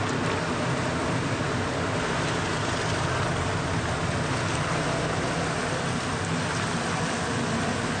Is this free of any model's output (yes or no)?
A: yes